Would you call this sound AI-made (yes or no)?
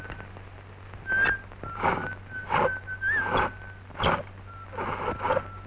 no